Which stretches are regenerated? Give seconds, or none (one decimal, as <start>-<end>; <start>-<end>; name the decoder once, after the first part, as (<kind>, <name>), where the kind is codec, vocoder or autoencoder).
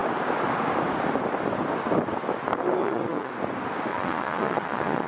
2.8-3.3 (vocoder, Vocos); 3.9-5.1